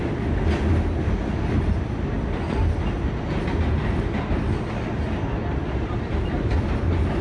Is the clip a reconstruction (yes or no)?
no